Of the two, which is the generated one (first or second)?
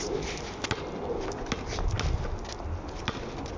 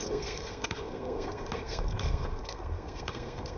second